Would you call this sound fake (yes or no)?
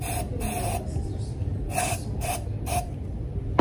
yes